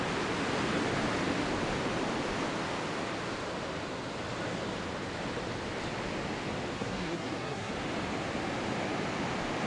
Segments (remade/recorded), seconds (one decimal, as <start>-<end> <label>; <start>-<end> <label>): 0.0-6.7 recorded; 6.7-7.7 remade; 7.7-9.7 recorded